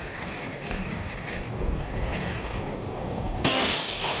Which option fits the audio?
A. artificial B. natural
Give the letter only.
A